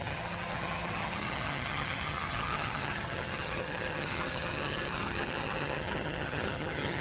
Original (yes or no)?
no